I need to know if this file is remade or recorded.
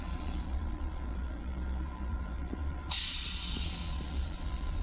remade